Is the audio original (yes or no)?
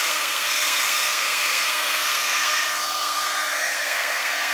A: no